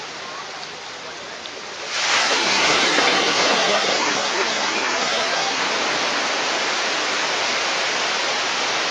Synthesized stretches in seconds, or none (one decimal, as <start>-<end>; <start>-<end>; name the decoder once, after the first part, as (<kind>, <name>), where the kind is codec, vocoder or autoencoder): 2.2-5.6 (codec, SNAC)